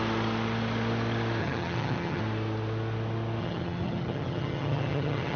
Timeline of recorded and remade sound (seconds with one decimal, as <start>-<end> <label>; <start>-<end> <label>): 0.0-1.4 recorded; 1.4-2.2 remade; 2.2-3.4 recorded; 3.4-5.4 remade